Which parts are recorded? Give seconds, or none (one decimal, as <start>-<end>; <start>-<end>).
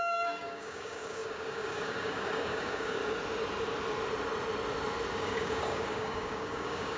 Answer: 3.0-5.2